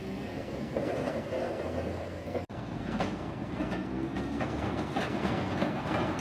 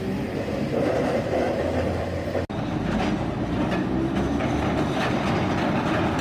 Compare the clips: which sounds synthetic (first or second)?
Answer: first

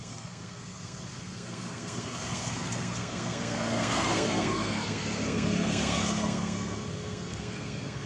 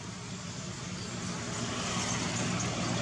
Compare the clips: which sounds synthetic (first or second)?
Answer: first